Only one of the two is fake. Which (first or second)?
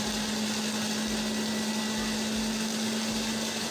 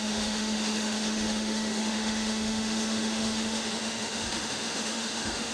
second